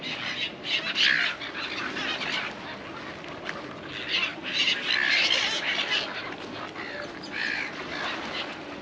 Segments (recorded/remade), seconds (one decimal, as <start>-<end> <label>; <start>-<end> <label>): 0.0-8.8 recorded